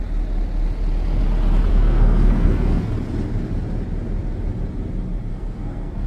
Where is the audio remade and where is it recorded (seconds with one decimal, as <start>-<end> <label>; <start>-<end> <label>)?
0.0-1.7 recorded; 1.7-2.9 remade; 2.9-5.3 recorded; 5.3-6.1 remade